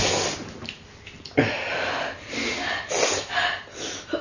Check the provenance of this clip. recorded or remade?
recorded